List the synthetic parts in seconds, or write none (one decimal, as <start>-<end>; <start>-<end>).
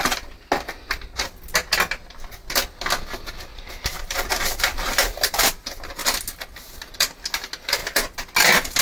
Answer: 3.5-5.5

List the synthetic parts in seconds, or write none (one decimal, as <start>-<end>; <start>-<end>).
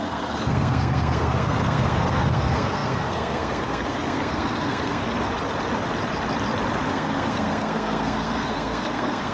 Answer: 0.0-5.0; 6.9-9.3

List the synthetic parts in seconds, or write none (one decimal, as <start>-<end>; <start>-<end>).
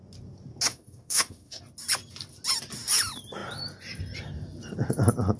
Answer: 0.7-1.6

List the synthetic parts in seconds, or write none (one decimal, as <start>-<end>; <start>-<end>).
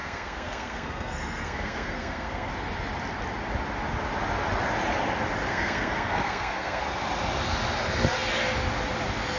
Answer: 0.0-2.5; 5.5-6.8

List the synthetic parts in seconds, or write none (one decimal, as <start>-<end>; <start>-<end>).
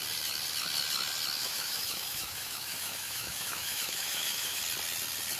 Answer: 1.4-4.6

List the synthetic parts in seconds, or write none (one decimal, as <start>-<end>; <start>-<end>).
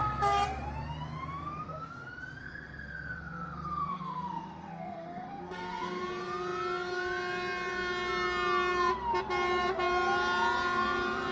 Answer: 2.4-6.0